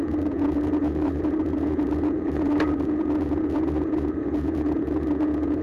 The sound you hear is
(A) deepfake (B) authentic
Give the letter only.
A